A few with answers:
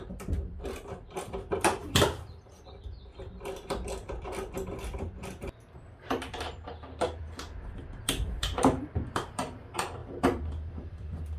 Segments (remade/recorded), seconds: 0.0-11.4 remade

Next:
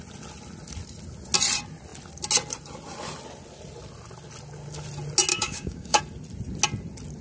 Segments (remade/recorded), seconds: 0.0-5.3 recorded; 5.3-6.0 remade; 6.0-7.2 recorded

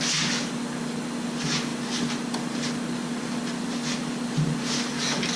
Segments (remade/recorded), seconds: 0.0-5.4 recorded

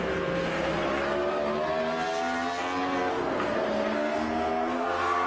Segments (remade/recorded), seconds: 0.0-0.7 remade; 0.7-3.1 recorded; 3.1-5.3 remade

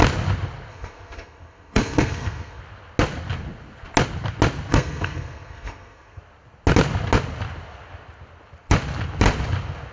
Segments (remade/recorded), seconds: 0.0-0.7 recorded; 0.7-2.6 remade; 2.6-4.7 recorded; 4.7-6.2 remade; 6.2-9.9 recorded

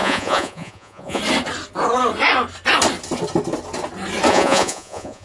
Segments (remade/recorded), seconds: 0.0-1.2 remade; 1.2-4.3 recorded; 4.3-5.2 remade